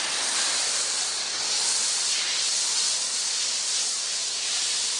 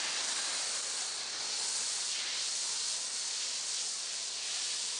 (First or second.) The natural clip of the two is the second